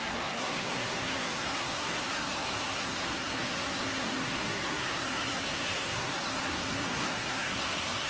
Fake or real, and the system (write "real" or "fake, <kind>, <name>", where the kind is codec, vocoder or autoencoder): fake, codec, SNAC